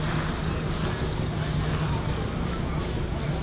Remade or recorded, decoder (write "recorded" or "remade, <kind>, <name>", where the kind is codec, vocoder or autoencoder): recorded